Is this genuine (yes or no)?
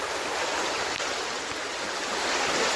yes